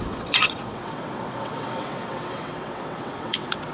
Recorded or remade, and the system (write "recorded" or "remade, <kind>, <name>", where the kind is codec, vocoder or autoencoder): remade, vocoder, WaveNeXt